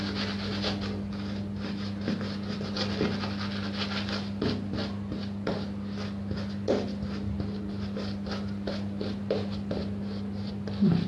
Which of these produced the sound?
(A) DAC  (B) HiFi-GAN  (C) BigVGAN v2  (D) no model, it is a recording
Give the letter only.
D